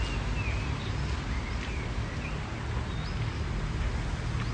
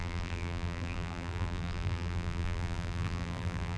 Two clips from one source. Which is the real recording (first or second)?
first